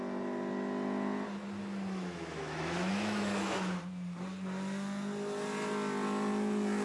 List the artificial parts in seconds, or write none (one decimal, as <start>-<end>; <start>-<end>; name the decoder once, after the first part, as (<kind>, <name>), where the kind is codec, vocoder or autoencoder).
1.6-3.8 (autoencoder, DAC-VAE)